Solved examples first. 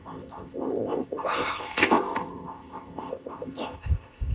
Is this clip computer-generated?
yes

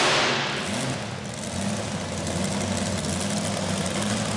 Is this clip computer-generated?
no